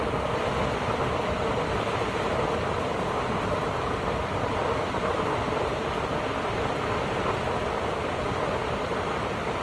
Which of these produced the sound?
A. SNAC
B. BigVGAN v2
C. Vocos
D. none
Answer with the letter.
D